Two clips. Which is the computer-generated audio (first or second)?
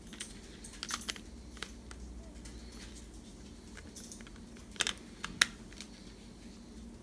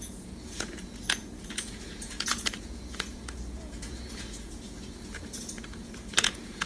second